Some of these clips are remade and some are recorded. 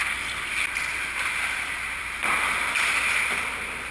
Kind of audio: remade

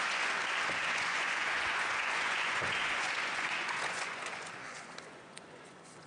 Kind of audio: remade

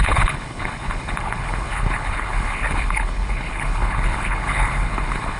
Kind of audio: remade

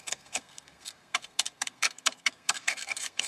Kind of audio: remade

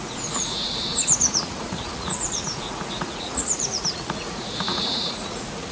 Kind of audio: remade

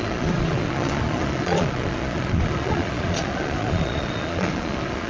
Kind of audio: remade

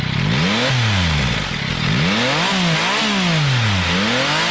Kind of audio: recorded